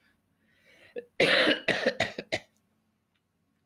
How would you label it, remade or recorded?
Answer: recorded